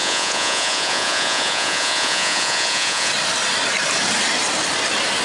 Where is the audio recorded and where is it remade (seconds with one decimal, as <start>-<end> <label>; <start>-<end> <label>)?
0.0-3.1 remade; 3.1-5.2 recorded